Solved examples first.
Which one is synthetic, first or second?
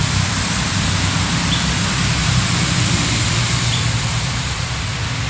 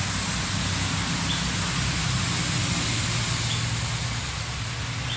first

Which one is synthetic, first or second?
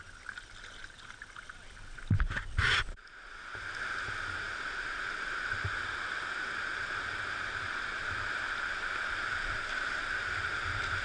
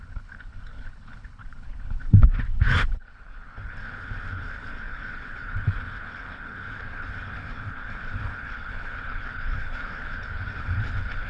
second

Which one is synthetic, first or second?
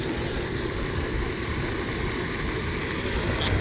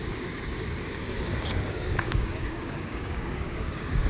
second